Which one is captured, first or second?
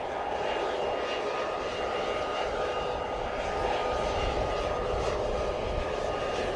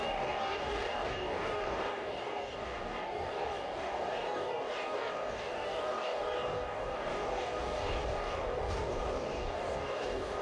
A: first